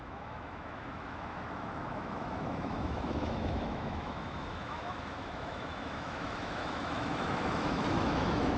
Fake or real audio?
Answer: fake